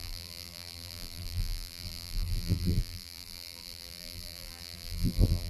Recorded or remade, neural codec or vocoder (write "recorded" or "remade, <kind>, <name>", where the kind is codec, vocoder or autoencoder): remade, vocoder, BigVGAN v2